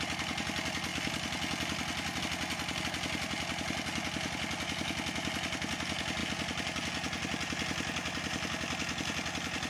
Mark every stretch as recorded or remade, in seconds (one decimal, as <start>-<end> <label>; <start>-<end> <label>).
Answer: 0.0-9.7 recorded